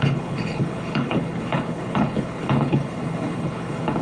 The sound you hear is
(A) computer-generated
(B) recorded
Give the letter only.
A